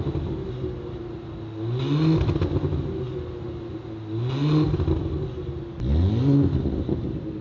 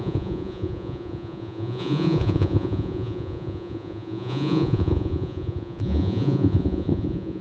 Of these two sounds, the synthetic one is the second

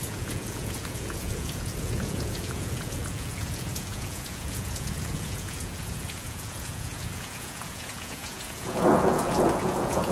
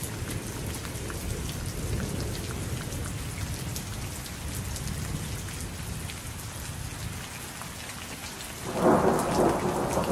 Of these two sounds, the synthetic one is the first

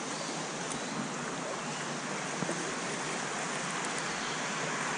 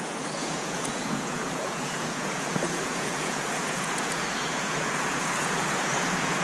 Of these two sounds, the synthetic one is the second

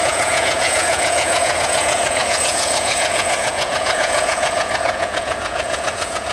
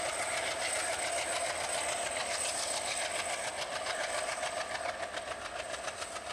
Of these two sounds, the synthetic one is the first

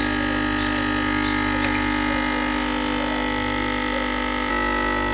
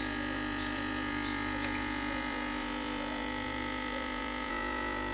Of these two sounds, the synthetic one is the second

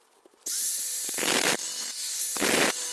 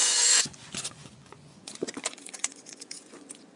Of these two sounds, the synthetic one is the second